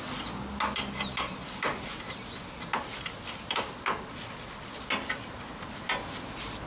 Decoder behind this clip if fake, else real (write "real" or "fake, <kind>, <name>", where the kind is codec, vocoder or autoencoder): real